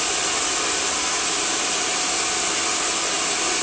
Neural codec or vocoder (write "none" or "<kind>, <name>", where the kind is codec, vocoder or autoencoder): none